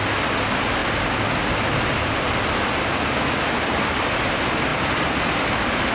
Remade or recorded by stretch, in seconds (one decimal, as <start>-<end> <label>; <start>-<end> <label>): 0.0-5.9 recorded